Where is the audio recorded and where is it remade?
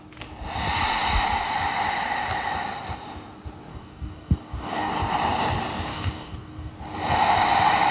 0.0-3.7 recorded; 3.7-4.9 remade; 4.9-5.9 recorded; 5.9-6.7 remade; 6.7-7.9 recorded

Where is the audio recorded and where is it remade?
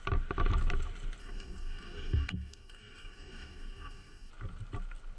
0.0-1.2 recorded; 1.2-4.3 remade; 4.3-5.2 recorded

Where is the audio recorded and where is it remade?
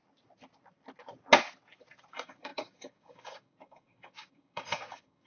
0.0-2.1 recorded; 2.1-5.3 remade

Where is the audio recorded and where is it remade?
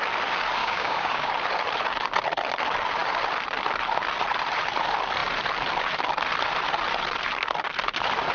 0.0-0.6 recorded; 0.6-1.3 remade; 1.3-8.3 recorded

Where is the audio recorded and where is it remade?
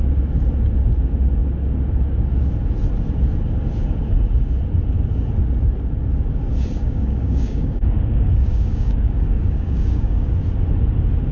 0.0-6.8 recorded; 6.8-10.3 remade; 10.3-11.3 recorded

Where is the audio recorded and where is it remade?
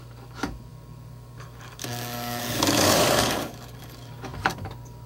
0.0-5.1 remade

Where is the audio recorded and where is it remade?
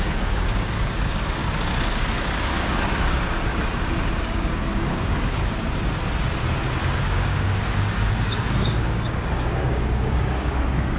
0.0-1.4 remade; 1.4-1.9 recorded; 1.9-3.5 remade; 3.5-4.2 recorded; 4.2-5.4 remade; 5.4-7.0 recorded; 7.0-11.0 remade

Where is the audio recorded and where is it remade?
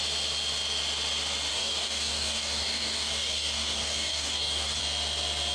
0.0-1.5 recorded; 1.5-4.8 remade; 4.8-5.5 recorded